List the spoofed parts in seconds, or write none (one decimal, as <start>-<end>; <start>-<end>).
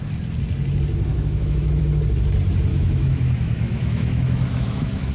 1.1-1.8; 2.7-5.1